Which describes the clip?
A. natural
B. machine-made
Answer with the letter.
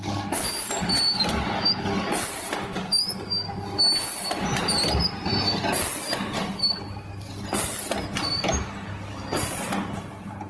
A